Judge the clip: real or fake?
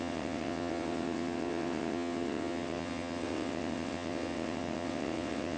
fake